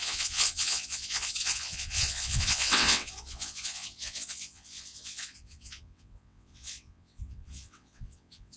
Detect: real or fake fake